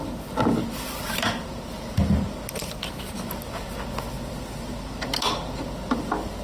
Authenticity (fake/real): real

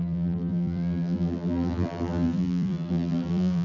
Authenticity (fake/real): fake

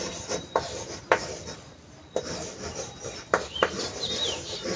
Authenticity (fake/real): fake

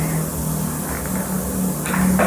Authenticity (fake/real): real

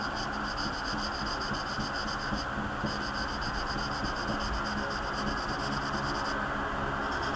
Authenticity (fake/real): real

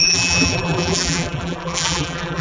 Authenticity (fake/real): fake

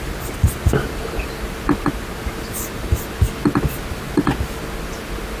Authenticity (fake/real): real